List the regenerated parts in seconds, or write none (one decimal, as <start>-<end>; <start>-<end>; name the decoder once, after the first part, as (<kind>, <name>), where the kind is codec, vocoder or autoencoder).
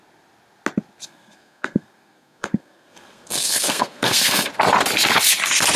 1.0-4.5 (codec, SNAC)